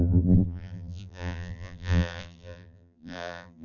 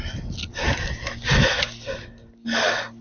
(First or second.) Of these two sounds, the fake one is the first